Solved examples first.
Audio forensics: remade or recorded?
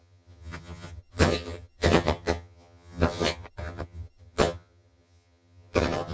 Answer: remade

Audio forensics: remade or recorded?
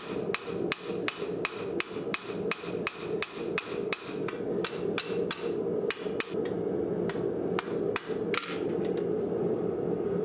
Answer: recorded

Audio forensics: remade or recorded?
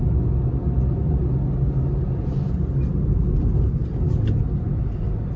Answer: recorded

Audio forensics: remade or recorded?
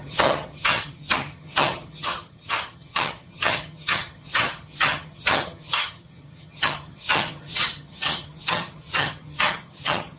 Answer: remade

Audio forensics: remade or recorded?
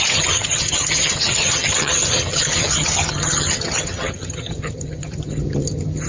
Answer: remade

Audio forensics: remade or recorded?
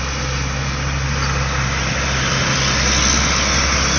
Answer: recorded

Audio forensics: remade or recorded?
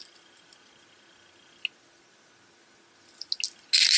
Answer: recorded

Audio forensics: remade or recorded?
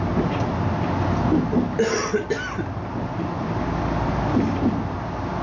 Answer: recorded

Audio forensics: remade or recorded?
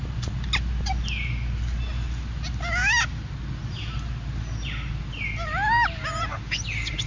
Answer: recorded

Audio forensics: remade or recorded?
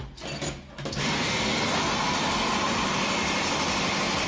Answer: recorded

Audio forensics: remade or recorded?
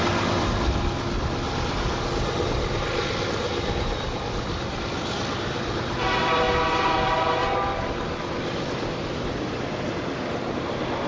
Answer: recorded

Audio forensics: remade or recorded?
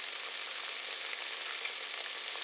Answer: recorded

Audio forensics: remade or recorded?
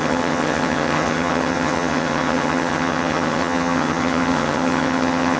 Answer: remade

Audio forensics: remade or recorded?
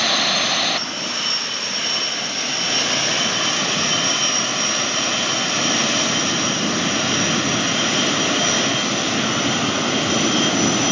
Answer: recorded